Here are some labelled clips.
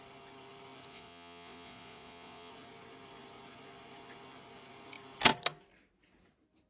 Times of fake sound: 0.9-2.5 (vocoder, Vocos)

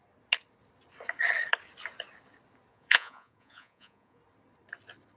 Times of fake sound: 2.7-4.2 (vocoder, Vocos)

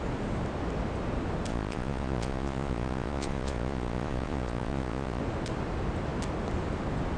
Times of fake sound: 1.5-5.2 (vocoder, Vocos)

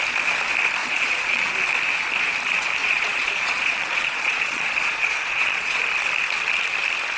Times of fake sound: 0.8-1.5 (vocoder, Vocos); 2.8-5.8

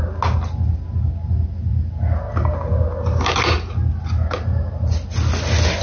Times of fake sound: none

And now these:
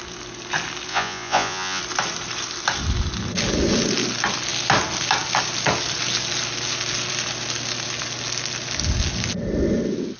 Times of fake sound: 0.9-1.8 (vocoder, Vocos)

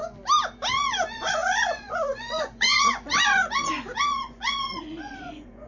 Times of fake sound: 0.7-5.7 (vocoder, Vocos)

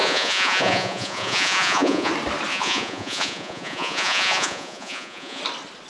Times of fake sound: 0.0-2.1 (vocoder, Vocos); 2.5-5.4